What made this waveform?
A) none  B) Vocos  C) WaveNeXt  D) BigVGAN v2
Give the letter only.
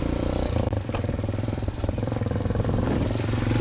D